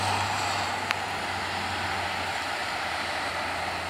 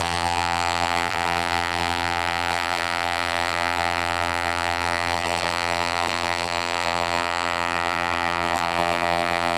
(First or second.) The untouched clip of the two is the first